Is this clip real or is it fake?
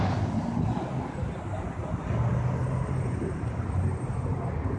real